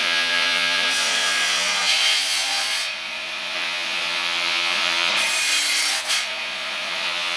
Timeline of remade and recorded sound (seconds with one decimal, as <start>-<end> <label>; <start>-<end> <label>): 0.0-5.1 remade; 5.1-5.9 recorded; 5.9-7.4 remade